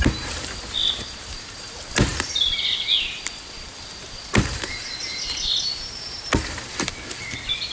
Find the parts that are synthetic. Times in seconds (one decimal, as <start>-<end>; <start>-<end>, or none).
none